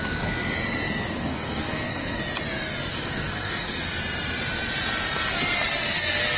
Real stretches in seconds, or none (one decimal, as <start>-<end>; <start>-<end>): 0.0-1.1; 2.2-2.9; 3.8-6.4